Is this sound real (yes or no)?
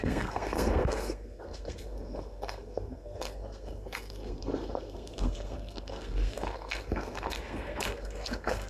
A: no